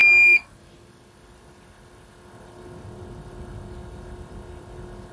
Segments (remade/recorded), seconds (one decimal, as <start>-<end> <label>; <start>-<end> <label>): 0.0-5.1 recorded